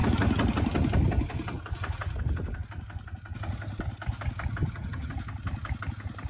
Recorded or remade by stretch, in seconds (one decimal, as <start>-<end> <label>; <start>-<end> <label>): 0.0-4.6 recorded; 4.6-5.1 remade; 5.1-6.3 recorded